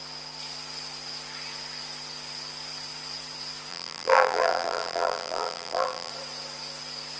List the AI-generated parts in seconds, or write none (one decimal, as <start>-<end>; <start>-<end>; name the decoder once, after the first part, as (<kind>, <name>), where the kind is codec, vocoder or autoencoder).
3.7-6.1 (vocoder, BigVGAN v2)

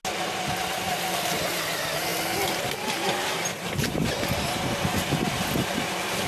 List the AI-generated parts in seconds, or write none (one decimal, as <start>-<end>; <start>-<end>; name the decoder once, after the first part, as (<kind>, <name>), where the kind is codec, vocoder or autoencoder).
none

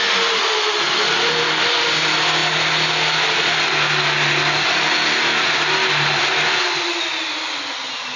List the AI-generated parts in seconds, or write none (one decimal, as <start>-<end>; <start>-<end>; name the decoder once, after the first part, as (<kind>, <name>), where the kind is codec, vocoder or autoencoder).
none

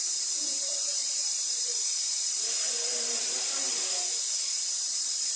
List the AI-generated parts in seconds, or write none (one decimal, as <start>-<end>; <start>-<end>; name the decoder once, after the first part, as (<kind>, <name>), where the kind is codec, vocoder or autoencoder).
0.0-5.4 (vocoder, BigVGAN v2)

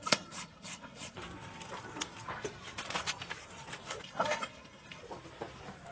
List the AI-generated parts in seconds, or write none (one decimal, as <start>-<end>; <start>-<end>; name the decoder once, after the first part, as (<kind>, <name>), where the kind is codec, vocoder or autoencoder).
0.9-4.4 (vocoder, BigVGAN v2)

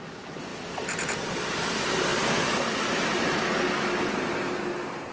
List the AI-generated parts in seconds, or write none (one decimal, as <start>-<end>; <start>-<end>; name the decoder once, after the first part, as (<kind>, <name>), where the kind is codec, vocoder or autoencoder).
0.5-1.3 (vocoder, BigVGAN v2); 2.1-3.4

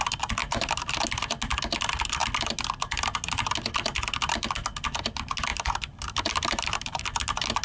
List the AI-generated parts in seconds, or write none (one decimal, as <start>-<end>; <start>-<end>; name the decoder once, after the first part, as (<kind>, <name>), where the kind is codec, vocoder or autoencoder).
0.4-1.0 (vocoder, BigVGAN v2); 5.5-7.0